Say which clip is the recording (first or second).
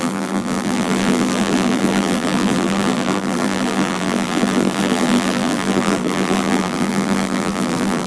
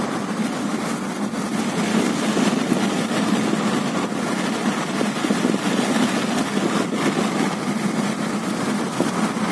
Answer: second